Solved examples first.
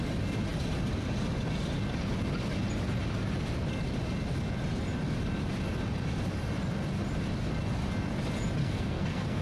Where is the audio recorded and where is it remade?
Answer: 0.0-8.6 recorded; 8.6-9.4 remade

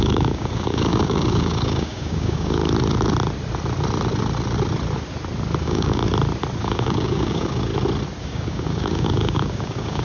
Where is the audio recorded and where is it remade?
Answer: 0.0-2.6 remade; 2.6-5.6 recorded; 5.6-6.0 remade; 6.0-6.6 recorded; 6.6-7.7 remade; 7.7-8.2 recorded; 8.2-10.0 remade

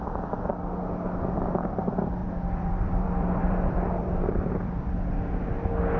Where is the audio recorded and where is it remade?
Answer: 0.0-2.2 recorded; 2.2-4.9 remade; 4.9-6.0 recorded